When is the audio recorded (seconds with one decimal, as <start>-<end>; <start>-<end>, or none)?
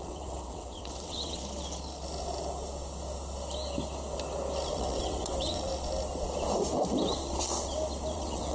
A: 1.4-4.7; 5.7-8.1